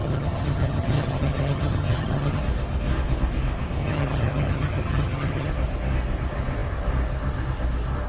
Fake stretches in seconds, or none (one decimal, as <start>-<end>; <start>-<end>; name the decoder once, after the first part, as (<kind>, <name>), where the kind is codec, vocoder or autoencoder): 0.0-2.4 (vocoder, HiFi-GAN); 3.8-5.5